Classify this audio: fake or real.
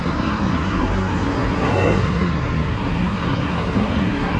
fake